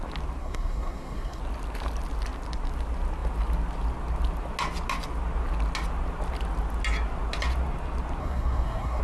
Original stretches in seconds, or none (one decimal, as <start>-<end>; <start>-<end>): 0.0-0.4; 1.4-8.2